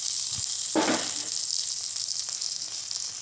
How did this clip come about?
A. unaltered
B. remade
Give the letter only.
A